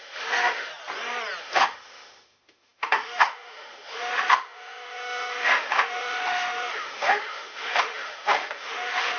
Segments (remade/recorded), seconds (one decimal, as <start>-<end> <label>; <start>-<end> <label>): 0.0-0.7 remade; 0.7-1.4 recorded; 1.4-9.2 remade